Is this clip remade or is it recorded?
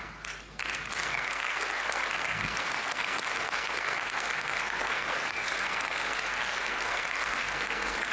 remade